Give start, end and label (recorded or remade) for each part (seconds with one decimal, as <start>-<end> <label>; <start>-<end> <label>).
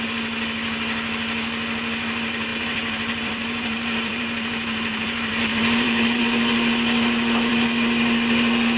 0.0-2.5 recorded; 2.5-6.2 remade; 6.2-8.8 recorded